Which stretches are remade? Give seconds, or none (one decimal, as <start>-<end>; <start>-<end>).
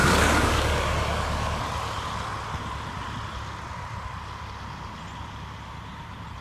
0.0-1.6